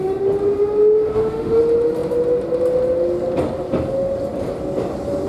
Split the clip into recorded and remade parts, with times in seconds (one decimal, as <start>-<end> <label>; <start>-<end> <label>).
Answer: 0.0-1.1 recorded; 1.1-1.6 remade; 1.6-5.3 recorded

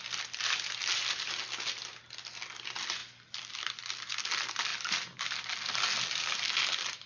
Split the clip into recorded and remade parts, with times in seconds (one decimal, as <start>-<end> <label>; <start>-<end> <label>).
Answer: 0.0-7.1 recorded

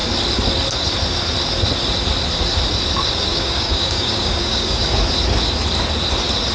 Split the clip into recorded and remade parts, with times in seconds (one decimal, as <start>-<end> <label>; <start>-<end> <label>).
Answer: 0.0-3.3 recorded; 3.3-5.0 remade; 5.0-6.5 recorded